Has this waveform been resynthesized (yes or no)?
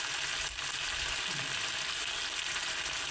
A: yes